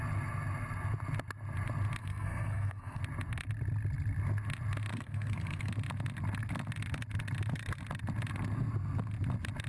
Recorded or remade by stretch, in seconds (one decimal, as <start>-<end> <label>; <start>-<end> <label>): 0.0-2.0 recorded; 2.0-3.0 remade; 3.0-4.9 recorded; 4.9-5.7 remade; 5.7-9.7 recorded